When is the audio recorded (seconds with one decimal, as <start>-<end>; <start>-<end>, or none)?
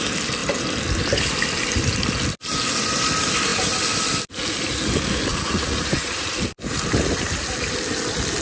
0.0-5.3; 6.3-8.4